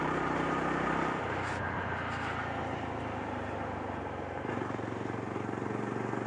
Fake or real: real